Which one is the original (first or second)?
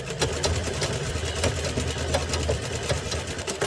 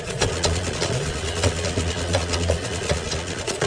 first